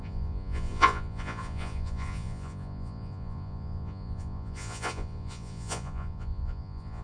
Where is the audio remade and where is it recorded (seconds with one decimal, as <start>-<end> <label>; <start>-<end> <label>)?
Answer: 0.0-7.0 remade